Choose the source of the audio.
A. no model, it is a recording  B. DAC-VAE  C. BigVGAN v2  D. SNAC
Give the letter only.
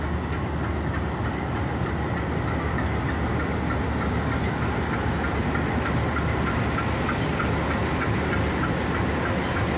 A